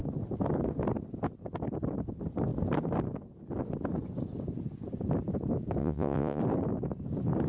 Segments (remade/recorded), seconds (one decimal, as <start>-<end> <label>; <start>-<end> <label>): 0.0-5.8 recorded; 5.8-6.4 remade; 6.4-7.5 recorded

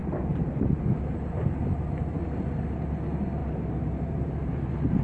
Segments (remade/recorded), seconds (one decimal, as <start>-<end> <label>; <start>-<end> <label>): 0.0-3.4 recorded; 3.4-4.5 remade; 4.5-5.0 recorded

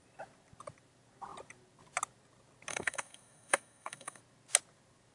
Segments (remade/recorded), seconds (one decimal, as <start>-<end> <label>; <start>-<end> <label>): 0.0-2.7 recorded; 2.7-4.2 remade; 4.2-5.1 recorded

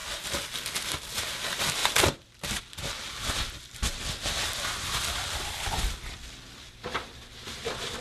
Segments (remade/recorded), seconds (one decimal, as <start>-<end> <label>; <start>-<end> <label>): 0.0-1.3 recorded; 1.3-8.0 remade

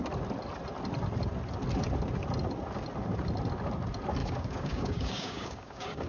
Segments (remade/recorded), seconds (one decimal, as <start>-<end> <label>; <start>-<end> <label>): 0.0-4.2 recorded; 4.2-6.1 remade

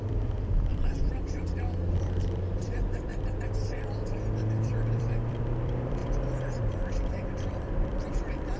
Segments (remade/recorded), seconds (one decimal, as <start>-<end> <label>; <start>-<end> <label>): 0.0-3.1 remade; 3.1-4.4 recorded; 4.4-6.0 remade; 6.0-6.6 recorded; 6.6-8.6 remade